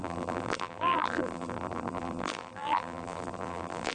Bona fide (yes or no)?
no